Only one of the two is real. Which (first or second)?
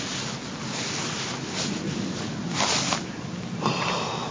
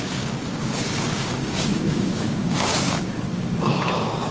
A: first